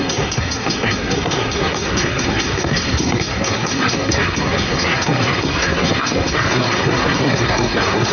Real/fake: fake